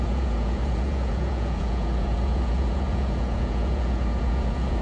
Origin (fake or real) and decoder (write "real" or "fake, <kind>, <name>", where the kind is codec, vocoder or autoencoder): fake, vocoder, Vocos